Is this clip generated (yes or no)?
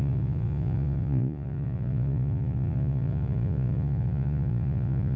yes